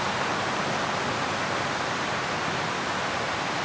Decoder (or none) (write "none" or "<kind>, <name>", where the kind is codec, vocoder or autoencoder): none